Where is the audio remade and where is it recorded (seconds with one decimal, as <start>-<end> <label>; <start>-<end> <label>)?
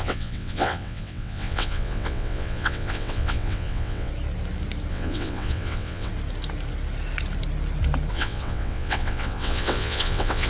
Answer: 0.0-4.1 remade; 4.1-4.9 recorded; 4.9-6.1 remade; 6.1-8.1 recorded; 8.1-10.5 remade